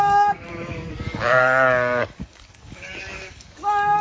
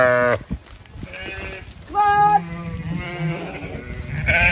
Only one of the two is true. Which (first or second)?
second